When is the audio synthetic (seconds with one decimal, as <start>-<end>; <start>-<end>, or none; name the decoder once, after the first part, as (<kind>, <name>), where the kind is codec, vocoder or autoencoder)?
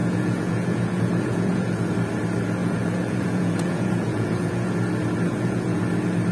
0.0-1.9 (vocoder, Vocos); 2.6-4.7; 5.3-5.8